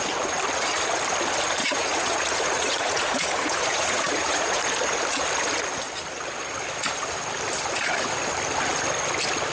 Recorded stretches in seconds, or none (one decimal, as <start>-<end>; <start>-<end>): 0.0-1.6; 4.6-9.5